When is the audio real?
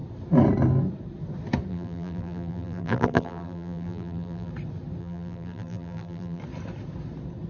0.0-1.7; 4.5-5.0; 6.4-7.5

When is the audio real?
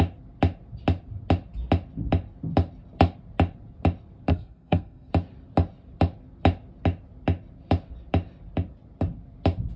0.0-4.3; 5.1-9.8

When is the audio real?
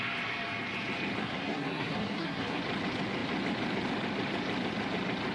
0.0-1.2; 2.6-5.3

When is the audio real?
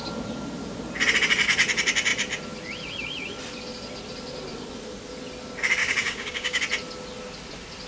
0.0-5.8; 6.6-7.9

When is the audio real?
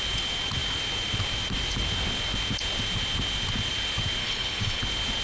0.0-4.2; 4.8-5.2